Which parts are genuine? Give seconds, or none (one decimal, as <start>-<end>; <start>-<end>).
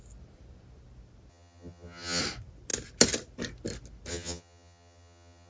0.0-1.3; 2.2-4.1